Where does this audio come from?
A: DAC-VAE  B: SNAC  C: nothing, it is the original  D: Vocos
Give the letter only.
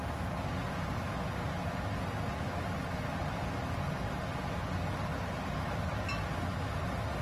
C